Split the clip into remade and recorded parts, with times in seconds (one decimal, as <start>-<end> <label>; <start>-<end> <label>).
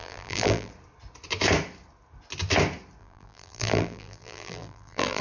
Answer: 0.0-0.7 remade; 0.7-3.0 recorded; 3.0-5.2 remade